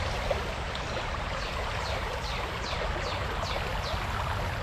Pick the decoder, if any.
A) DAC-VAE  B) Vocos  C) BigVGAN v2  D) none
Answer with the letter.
D